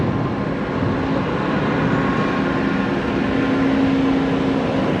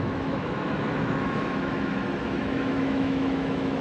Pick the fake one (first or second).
second